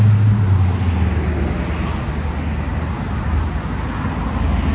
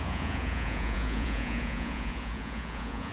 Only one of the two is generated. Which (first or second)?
second